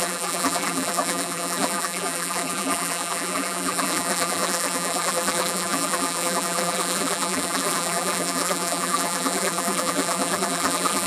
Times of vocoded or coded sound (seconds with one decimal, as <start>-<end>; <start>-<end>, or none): 0.0-11.1